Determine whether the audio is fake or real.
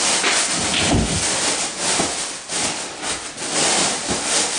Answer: real